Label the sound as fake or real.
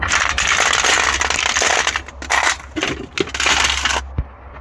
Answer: real